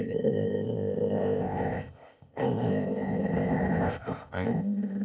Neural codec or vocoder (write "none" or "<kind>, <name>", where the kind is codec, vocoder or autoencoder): codec, ZipCodec